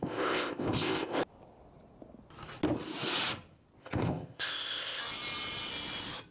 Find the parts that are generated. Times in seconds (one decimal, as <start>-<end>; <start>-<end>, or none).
0.0-1.2; 3.8-5.0